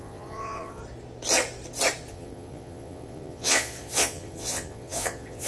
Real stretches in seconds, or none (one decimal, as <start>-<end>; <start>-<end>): 0.8-2.1